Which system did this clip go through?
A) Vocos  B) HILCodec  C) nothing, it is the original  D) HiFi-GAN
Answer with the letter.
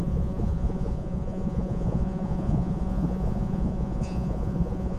A